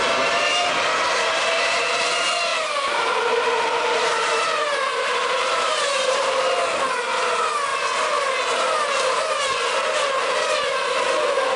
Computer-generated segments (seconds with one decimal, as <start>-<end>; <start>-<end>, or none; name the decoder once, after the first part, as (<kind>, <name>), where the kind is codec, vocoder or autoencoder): 2.5-6.4 (vocoder, BigVGAN v2)